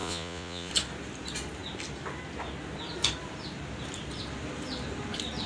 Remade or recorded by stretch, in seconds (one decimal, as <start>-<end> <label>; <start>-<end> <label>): 0.0-0.7 remade; 0.7-5.5 recorded